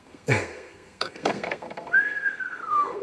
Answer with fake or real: fake